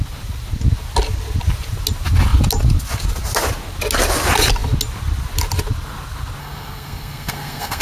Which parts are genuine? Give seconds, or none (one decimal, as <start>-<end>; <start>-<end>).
0.0-6.4